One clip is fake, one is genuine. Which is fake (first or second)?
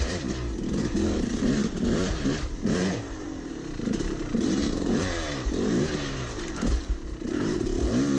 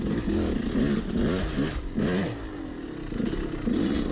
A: first